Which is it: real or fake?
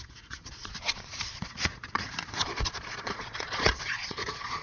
fake